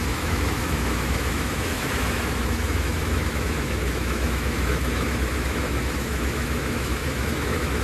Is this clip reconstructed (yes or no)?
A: yes